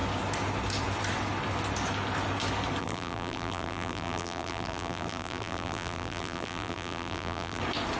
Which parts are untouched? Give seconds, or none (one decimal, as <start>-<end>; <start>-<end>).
0.0-2.8; 7.6-8.0

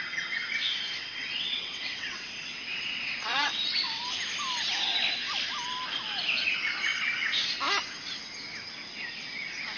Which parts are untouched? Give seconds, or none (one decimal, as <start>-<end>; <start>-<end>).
0.0-1.0; 2.3-2.7; 4.0-9.8

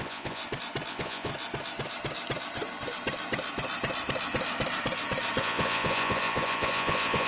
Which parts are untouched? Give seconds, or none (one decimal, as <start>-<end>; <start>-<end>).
0.4-0.9; 1.3-5.4

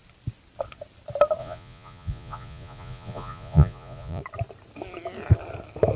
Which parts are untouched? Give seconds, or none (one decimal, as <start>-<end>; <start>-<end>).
0.0-1.4; 4.2-6.0

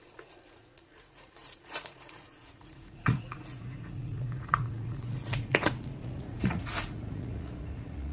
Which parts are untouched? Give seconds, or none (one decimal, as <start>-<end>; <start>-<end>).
none

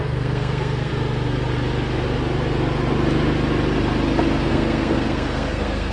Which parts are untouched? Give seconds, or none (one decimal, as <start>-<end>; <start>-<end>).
0.9-4.4

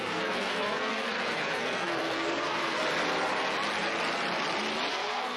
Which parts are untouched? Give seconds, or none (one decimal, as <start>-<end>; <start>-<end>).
2.8-4.9

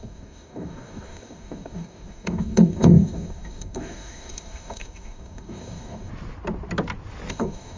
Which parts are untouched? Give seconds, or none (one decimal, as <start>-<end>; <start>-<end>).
6.1-7.3